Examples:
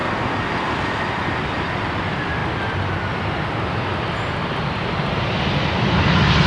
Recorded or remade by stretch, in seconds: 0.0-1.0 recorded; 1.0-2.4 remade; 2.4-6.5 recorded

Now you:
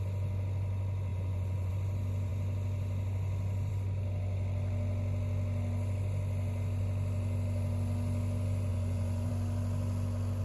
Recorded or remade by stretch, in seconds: 0.0-1.1 recorded; 1.1-1.7 remade; 1.7-8.7 recorded; 8.7-9.3 remade; 9.3-10.4 recorded

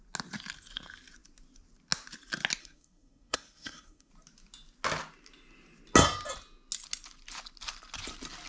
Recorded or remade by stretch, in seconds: 0.0-2.6 recorded; 2.6-4.1 remade; 4.1-8.5 recorded

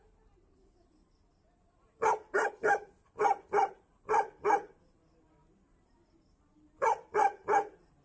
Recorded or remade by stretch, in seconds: 0.0-8.0 recorded

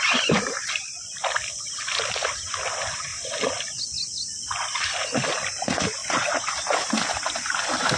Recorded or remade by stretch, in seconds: 0.0-6.0 recorded; 6.0-6.5 remade; 6.5-8.0 recorded

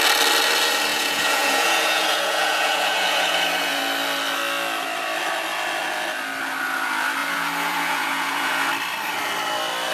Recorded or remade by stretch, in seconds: 0.0-0.9 recorded; 0.9-3.8 remade; 3.8-7.2 recorded; 7.2-8.7 remade; 8.7-9.9 recorded

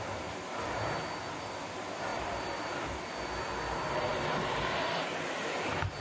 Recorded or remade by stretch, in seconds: 0.0-2.1 recorded; 2.1-3.3 remade; 3.3-4.1 recorded; 4.1-5.4 remade; 5.4-6.0 recorded